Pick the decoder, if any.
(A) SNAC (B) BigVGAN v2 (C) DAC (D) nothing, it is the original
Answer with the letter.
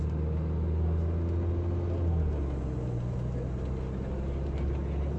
D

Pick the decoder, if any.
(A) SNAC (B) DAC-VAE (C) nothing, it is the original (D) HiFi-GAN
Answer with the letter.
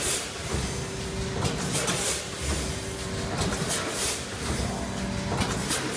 C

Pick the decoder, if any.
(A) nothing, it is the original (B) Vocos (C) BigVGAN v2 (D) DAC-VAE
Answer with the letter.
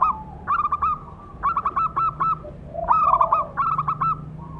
A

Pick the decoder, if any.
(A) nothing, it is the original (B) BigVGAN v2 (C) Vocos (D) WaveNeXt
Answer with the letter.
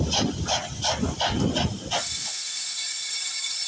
A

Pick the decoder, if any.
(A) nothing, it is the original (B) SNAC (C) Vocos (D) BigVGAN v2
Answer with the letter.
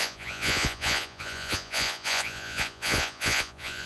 C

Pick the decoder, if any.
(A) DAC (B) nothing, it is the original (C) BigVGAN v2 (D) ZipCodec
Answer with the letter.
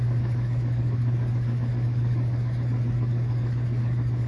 A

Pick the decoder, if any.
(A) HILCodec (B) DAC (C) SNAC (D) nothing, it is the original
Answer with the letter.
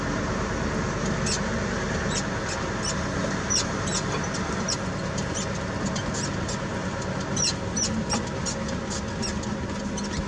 D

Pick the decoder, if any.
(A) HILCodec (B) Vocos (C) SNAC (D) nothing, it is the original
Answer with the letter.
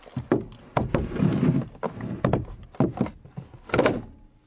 D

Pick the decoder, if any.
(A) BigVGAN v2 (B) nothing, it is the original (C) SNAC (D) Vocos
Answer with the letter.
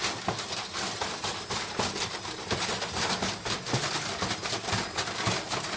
B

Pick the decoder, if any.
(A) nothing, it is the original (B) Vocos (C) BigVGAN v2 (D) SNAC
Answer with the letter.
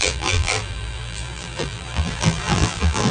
C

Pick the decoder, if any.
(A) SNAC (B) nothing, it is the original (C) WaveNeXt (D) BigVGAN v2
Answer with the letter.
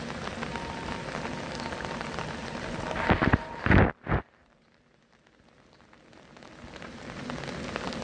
B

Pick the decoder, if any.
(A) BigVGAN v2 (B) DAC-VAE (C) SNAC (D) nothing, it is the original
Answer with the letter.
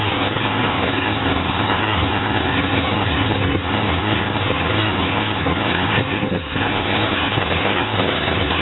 C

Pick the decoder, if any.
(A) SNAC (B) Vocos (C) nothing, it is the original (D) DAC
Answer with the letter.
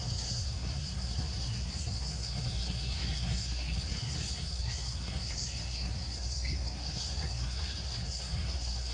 A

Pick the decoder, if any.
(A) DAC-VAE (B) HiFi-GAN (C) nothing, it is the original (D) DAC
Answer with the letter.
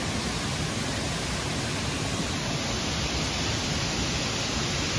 C